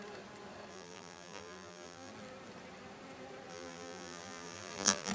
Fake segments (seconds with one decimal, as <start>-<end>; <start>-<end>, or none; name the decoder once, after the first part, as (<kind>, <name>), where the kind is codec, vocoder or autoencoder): 0.7-2.1 (vocoder, BigVGAN v2); 3.5-5.1